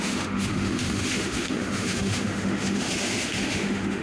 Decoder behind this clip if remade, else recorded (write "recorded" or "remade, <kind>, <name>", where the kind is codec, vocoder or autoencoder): remade, autoencoder, DAC-VAE